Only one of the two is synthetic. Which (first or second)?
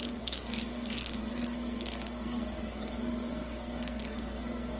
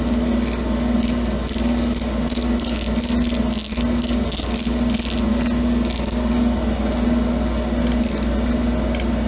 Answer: first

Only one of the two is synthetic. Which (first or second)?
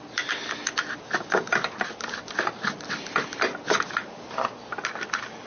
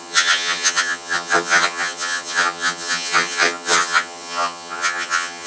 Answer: second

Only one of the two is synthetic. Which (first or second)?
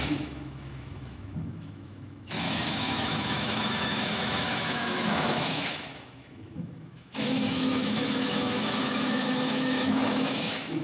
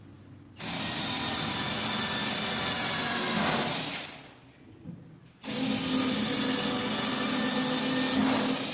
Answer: first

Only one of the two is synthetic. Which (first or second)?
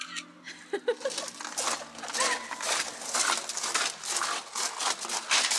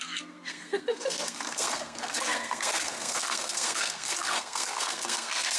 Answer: second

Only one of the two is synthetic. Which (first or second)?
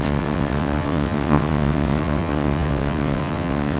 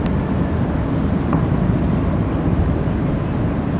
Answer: first